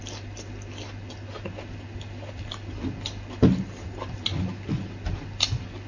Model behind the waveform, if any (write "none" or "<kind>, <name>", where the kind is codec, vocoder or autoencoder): none